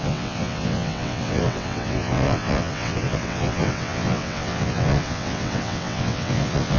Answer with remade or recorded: remade